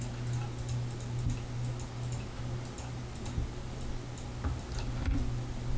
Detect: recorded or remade recorded